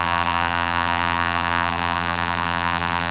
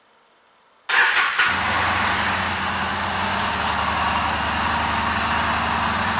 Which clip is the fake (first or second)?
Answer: first